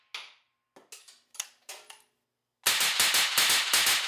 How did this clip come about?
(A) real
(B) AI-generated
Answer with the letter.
A